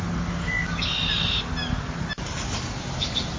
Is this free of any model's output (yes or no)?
yes